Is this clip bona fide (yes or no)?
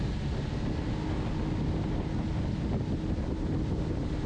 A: yes